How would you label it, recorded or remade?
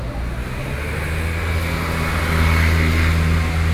recorded